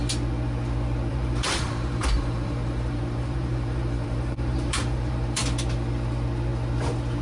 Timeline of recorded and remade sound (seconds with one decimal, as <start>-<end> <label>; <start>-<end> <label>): 0.0-1.1 recorded; 1.1-5.4 remade; 5.4-7.2 recorded